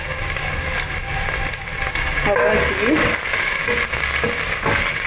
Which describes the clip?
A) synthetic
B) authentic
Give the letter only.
B